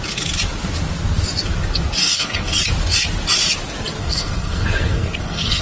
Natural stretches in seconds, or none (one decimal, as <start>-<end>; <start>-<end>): 0.0-2.0; 2.6-4.0